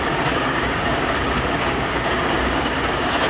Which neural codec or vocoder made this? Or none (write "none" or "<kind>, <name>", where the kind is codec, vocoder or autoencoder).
codec, DAC